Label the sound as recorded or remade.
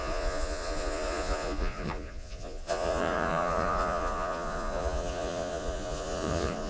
remade